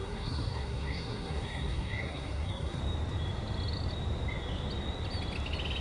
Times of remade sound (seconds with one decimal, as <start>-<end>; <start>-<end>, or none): 0.0-2.8